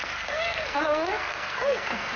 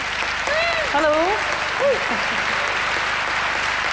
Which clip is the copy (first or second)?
first